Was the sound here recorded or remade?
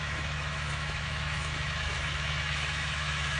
remade